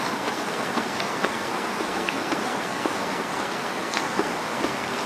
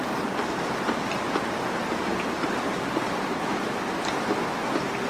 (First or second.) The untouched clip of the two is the second